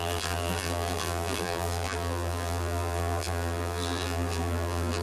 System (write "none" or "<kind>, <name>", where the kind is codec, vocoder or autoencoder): vocoder, BigVGAN v2